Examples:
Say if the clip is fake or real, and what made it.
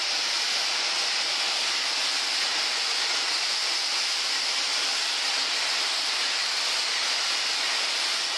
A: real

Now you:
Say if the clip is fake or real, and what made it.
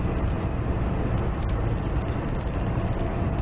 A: real